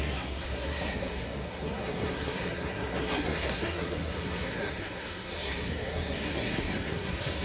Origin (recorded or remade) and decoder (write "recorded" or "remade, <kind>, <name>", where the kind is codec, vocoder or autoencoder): remade, codec, SNAC